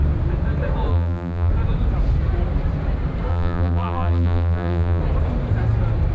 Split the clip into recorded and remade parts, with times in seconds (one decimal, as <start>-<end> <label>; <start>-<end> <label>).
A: 0.0-0.9 recorded; 0.9-1.5 remade; 1.5-3.3 recorded; 3.3-5.0 remade; 5.0-6.1 recorded